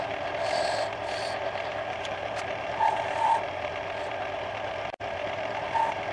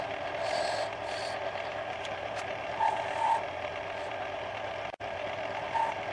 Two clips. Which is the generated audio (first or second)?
first